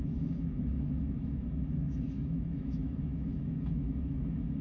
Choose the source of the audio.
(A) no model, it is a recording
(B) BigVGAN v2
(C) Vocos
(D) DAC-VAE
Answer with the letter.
D